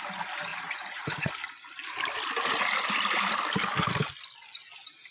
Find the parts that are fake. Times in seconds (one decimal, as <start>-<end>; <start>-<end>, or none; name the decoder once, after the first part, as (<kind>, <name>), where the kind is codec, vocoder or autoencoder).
0.5-1.3 (vocoder, Vocos)